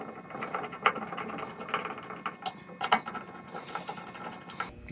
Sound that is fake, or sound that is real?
real